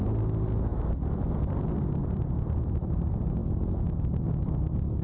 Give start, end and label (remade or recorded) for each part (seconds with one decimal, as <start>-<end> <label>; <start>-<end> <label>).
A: 0.0-0.7 recorded; 0.7-1.3 remade; 1.3-2.0 recorded; 2.0-2.7 remade; 2.7-5.0 recorded